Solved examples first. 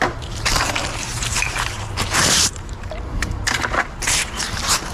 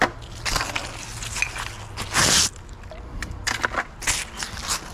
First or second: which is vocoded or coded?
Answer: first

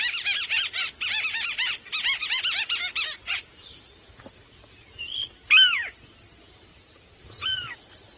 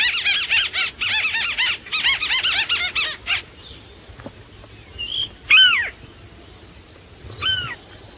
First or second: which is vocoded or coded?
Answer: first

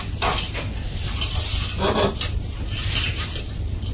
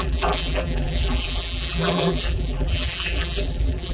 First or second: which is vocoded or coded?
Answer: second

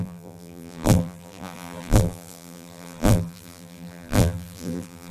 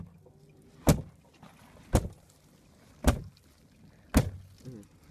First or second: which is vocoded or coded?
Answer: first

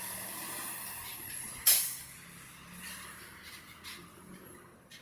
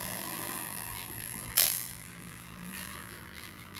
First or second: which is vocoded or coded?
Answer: second